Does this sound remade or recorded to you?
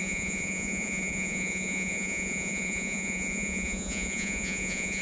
remade